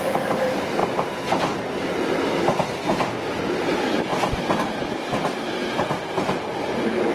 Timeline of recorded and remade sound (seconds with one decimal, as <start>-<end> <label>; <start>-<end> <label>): 0.0-7.1 recorded